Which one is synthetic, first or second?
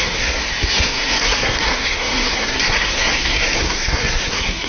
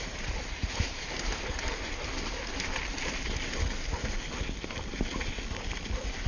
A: first